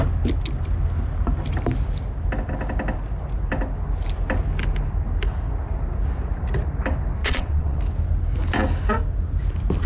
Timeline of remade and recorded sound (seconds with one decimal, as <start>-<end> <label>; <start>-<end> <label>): 0.0-7.2 recorded; 7.2-7.8 remade; 7.8-9.9 recorded